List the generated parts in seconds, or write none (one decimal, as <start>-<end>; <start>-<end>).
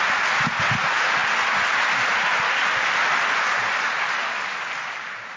none